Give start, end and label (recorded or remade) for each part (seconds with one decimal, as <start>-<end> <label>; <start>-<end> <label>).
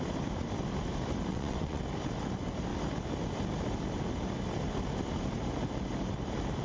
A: 0.0-1.3 recorded; 1.3-1.8 remade; 1.8-6.6 recorded